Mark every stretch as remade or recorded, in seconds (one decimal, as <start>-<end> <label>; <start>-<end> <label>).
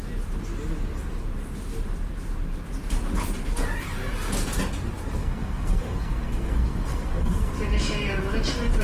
0.0-5.2 recorded; 5.2-7.5 remade; 7.5-8.8 recorded